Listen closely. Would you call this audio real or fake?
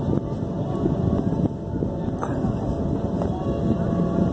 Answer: real